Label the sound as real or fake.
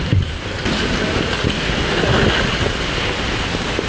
real